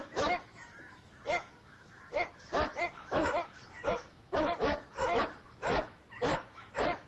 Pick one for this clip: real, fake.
fake